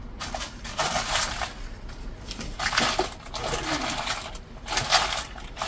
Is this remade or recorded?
recorded